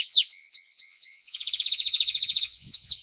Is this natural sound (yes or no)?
no